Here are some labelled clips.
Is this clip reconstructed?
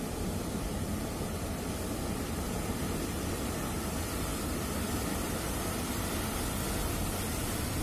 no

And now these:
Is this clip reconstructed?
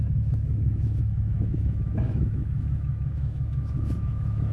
yes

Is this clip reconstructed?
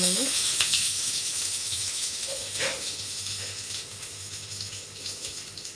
yes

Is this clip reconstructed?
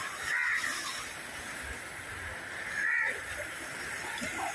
no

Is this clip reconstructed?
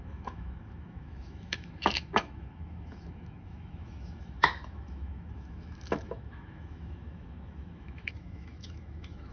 yes